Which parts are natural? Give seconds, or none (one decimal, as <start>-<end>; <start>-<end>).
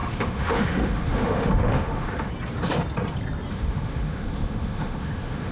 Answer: 2.3-3.5